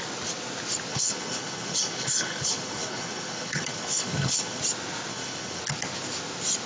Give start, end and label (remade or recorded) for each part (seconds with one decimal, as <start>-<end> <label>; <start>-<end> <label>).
0.0-0.9 recorded; 0.9-4.6 remade; 4.6-5.1 recorded; 5.1-5.6 remade; 5.6-6.7 recorded